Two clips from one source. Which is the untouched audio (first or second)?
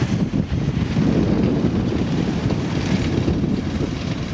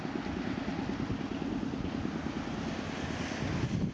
second